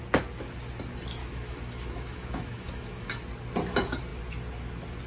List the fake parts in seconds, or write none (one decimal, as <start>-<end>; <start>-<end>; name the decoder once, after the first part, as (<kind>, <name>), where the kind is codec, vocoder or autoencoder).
1.2-3.1 (autoencoder, DAC-VAE)

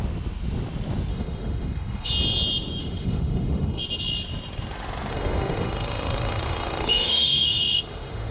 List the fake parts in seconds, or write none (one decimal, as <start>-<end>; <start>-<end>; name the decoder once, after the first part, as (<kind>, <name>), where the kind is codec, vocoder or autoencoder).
1.1-2.1 (autoencoder, DAC-VAE); 2.8-3.8; 5.1-8.3

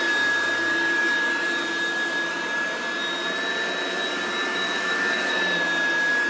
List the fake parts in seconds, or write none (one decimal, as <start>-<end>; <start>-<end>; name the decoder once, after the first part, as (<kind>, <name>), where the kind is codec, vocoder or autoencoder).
4.5-5.4 (autoencoder, DAC-VAE)

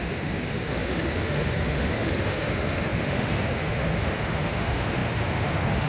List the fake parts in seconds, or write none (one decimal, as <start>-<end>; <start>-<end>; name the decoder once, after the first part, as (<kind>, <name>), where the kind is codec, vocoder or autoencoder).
0.0-5.9 (autoencoder, DAC-VAE)

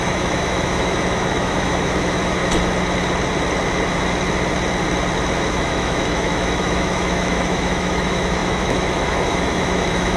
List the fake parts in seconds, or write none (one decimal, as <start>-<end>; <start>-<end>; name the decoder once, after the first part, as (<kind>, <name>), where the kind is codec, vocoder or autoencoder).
0.0-2.4 (autoencoder, DAC-VAE); 5.5-10.2